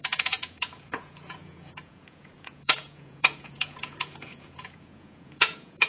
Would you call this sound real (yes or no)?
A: no